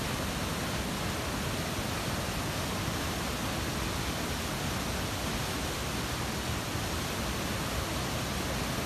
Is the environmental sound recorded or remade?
recorded